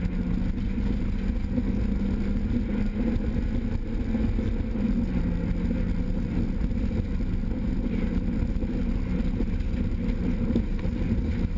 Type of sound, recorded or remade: recorded